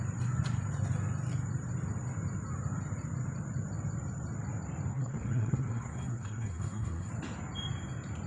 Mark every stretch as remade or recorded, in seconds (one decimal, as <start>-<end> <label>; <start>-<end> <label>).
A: 0.0-4.9 recorded; 4.9-7.1 remade; 7.1-8.3 recorded